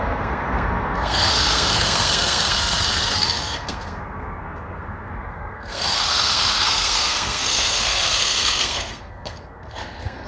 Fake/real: fake